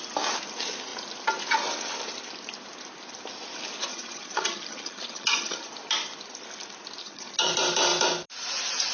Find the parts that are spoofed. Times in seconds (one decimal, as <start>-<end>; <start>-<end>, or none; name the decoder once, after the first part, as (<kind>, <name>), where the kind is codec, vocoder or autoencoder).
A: 3.9-5.7 (vocoder, HiFi-GAN); 7.0-7.5

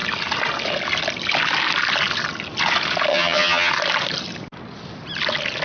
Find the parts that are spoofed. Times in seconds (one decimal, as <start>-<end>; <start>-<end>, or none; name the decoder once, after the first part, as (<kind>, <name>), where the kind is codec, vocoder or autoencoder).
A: 3.1-3.7 (vocoder, HiFi-GAN)

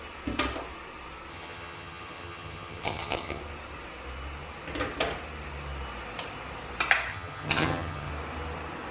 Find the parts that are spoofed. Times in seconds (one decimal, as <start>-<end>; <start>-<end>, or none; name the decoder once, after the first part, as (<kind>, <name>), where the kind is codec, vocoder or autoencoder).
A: 1.3-3.4 (vocoder, HiFi-GAN); 7.1-8.1

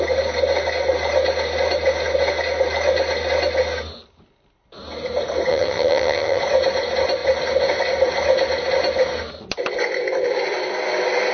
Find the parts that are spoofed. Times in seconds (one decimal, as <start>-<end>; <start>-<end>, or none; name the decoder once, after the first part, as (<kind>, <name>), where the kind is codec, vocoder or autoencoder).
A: 5.5-6.4 (vocoder, HiFi-GAN)